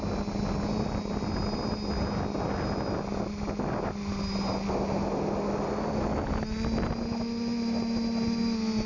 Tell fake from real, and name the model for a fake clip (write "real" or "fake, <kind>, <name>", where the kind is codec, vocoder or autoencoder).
real